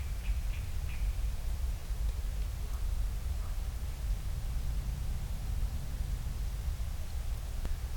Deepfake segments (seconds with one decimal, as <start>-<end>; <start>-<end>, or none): none